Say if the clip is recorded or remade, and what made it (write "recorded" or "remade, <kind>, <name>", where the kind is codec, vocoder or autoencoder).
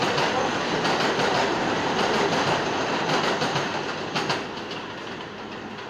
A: recorded